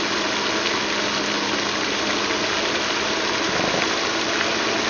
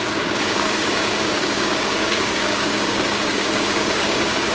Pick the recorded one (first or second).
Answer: first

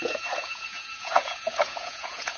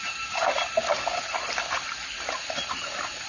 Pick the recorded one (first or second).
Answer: second